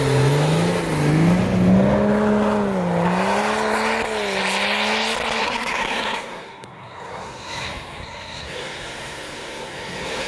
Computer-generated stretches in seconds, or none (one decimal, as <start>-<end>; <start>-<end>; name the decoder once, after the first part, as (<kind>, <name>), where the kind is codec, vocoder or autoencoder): 5.4-10.3 (codec, SNAC)